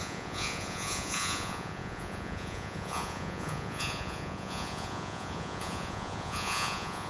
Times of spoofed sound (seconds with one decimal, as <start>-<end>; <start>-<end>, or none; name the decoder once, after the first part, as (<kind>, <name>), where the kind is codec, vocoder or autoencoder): 0.0-7.1 (vocoder, Vocos)